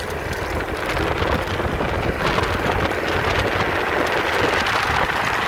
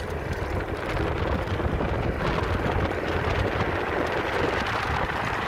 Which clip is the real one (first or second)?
first